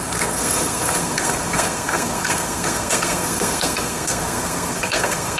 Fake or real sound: fake